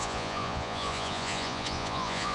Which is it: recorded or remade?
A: remade